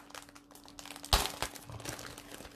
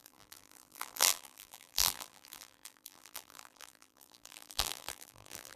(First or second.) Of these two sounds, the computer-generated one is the second